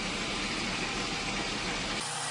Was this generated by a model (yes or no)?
yes